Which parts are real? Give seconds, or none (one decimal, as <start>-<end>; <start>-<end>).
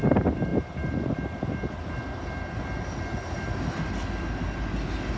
0.0-5.2